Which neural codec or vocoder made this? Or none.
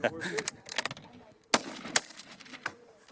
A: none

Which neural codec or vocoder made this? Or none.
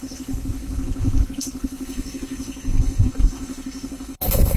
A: codec, SNAC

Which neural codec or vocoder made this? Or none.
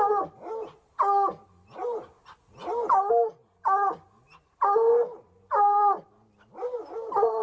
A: none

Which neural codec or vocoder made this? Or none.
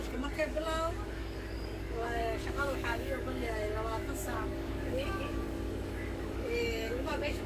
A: codec, DAC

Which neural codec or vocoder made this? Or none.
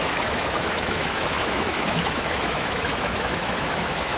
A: autoencoder, DAC-VAE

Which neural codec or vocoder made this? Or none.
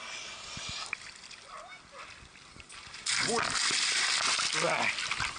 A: none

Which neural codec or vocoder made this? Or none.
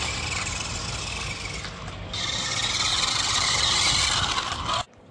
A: none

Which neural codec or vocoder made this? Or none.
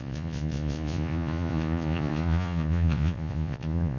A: vocoder, Vocos